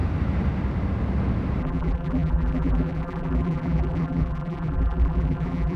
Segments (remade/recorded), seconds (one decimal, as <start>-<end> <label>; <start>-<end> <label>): 0.0-1.6 recorded; 1.6-5.8 remade

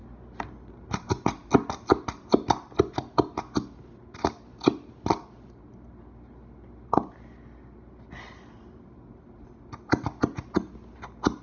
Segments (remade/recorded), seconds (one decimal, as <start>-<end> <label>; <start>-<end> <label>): 0.0-11.4 recorded

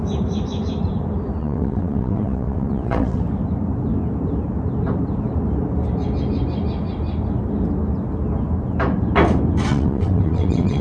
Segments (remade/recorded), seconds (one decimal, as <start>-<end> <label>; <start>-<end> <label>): 0.0-1.4 recorded; 1.4-3.2 remade; 3.2-9.7 recorded; 9.7-10.8 remade

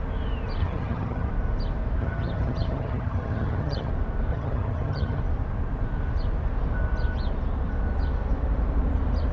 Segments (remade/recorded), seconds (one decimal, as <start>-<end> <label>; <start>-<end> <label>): 0.0-0.6 recorded; 0.6-1.3 remade; 1.3-2.0 recorded; 2.0-3.9 remade; 3.9-4.3 recorded; 4.3-5.2 remade; 5.2-9.3 recorded

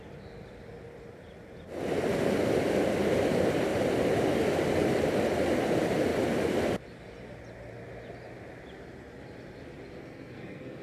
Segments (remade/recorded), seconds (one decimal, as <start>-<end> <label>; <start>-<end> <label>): 0.0-10.0 recorded; 10.0-10.8 remade

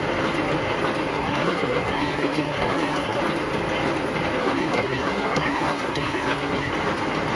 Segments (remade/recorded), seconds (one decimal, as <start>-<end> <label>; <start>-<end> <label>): 0.0-1.1 recorded; 1.1-3.2 remade; 3.2-4.4 recorded; 4.4-6.7 remade; 6.7-7.4 recorded

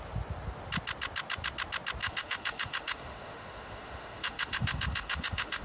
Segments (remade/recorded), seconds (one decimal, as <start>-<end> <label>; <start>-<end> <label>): 0.0-2.0 recorded; 2.0-5.6 remade

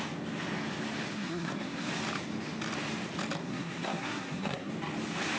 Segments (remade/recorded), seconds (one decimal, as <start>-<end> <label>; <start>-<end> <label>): 0.0-1.1 recorded; 1.1-1.9 remade; 1.9-3.4 recorded; 3.4-4.7 remade; 4.7-5.4 recorded